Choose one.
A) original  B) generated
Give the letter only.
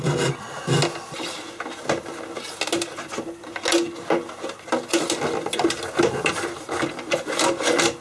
A